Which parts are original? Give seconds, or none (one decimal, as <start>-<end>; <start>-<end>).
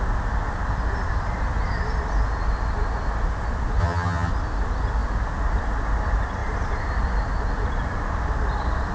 0.0-3.8; 4.3-8.9